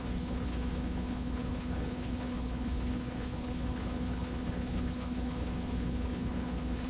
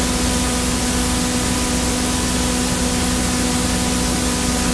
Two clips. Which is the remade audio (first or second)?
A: first